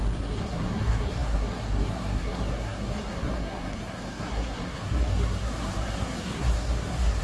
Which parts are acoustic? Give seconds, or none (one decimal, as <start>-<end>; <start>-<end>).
none